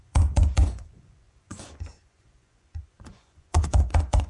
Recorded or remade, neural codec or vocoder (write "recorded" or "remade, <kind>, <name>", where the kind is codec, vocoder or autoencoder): remade, vocoder, Vocos